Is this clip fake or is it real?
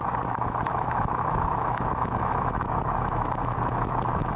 fake